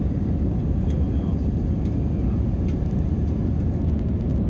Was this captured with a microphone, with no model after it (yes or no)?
yes